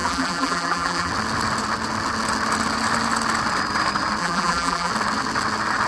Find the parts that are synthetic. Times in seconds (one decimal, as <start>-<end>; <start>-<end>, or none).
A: 0.0-1.1; 4.2-4.9